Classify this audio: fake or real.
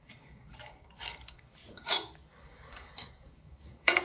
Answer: fake